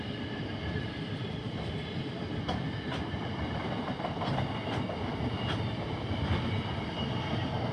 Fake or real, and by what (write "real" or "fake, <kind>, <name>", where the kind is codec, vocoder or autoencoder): fake, vocoder, BigVGAN v2